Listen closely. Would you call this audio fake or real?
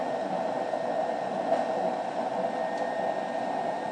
real